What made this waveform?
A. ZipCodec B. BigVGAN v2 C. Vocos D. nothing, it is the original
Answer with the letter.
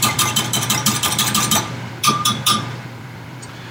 B